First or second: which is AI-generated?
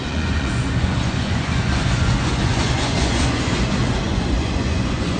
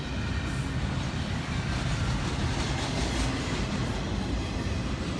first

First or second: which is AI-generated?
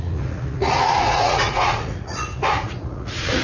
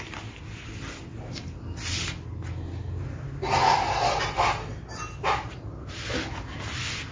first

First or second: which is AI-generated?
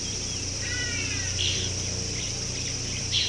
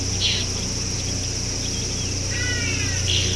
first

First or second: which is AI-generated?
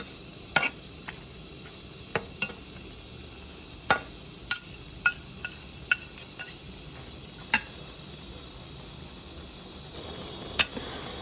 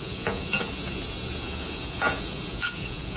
second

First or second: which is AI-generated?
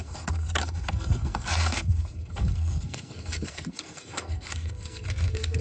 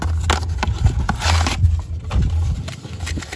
first